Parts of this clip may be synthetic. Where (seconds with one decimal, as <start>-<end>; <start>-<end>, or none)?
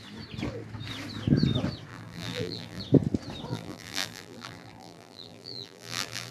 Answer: 1.9-2.8; 3.5-6.3